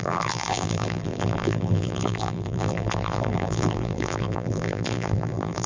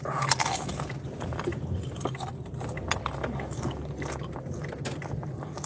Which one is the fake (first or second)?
first